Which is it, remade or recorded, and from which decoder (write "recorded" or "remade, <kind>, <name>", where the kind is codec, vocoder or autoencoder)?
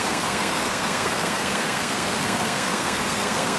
remade, codec, SNAC